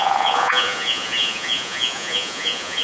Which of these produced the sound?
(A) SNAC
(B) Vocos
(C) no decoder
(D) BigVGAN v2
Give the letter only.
B